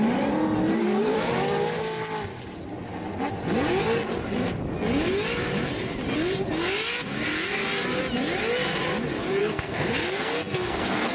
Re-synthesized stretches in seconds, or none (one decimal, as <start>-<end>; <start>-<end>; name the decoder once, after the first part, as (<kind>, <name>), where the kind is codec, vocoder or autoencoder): 9.4-11.1 (codec, SNAC)